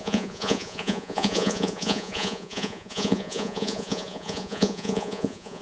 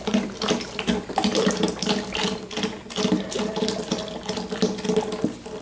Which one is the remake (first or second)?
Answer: first